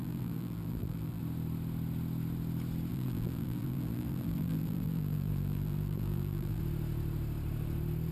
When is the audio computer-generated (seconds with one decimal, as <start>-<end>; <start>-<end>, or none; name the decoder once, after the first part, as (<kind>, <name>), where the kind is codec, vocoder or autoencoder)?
0.0-1.2 (vocoder, BigVGAN v2); 2.9-6.6